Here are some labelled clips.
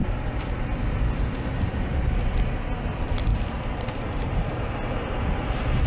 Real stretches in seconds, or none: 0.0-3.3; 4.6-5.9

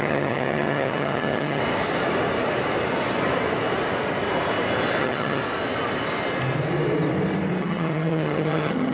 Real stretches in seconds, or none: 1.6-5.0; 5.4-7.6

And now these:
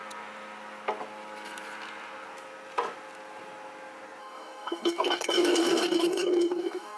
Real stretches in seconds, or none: 0.0-4.2